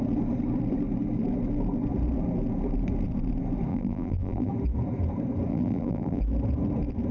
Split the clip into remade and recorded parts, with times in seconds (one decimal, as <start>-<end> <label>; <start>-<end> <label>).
0.0-3.7 recorded; 3.7-4.5 remade; 4.5-5.5 recorded; 5.5-6.2 remade; 6.2-7.1 recorded